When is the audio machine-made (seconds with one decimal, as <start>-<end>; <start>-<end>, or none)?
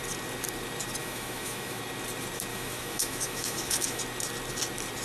1.0-1.8; 2.5-4.0